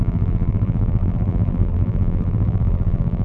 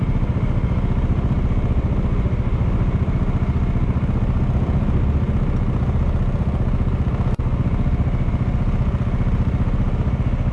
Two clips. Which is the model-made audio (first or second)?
first